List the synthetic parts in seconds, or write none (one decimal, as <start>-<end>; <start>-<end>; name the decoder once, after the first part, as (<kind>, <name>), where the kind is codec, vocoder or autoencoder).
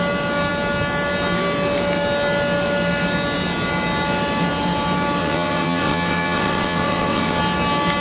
5.2-7.4 (vocoder, WaveNeXt)